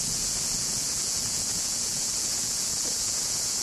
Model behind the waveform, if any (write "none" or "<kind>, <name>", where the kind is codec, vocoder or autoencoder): vocoder, Vocos